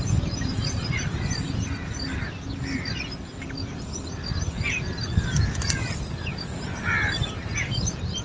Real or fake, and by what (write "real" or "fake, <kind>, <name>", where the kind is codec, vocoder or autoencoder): real